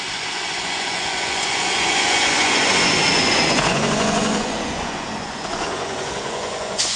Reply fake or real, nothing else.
fake